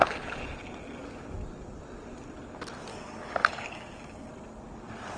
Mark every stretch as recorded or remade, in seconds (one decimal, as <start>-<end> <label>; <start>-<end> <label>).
0.0-2.9 recorded; 2.9-4.3 remade; 4.3-5.2 recorded

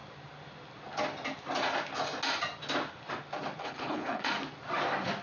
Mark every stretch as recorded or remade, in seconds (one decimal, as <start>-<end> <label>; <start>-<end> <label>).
0.0-3.6 recorded; 3.6-4.3 remade; 4.3-5.2 recorded

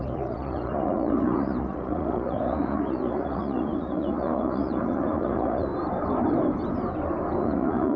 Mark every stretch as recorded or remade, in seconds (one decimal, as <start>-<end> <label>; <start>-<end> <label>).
0.0-5.7 remade; 5.7-7.4 recorded; 7.4-8.0 remade